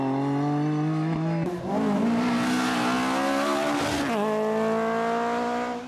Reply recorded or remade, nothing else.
recorded